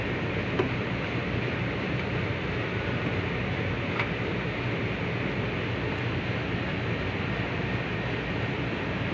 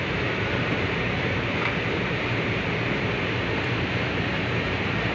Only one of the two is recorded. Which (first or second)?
first